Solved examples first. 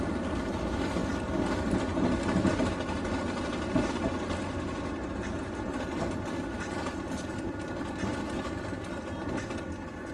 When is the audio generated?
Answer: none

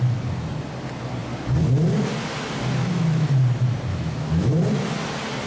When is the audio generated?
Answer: 2.8-3.3 (autoencoder, DAC-VAE); 3.9-4.5